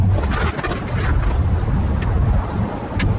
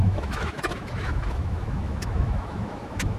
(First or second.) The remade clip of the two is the second